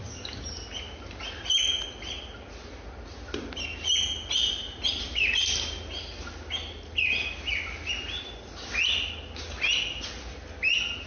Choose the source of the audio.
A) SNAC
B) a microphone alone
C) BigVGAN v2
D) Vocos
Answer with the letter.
B